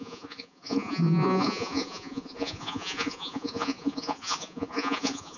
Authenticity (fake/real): fake